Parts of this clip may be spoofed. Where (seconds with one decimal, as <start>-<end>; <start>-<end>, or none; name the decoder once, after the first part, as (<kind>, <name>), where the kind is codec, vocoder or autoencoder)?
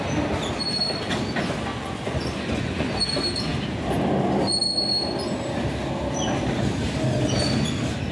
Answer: 1.7-2.9 (vocoder, Vocos)